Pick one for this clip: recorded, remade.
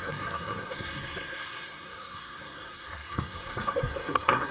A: remade